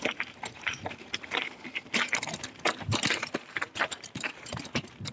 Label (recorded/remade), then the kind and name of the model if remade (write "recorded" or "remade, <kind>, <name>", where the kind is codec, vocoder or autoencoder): remade, vocoder, BigVGAN v2